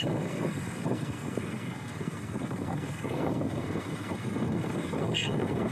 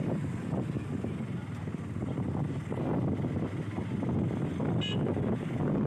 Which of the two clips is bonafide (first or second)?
second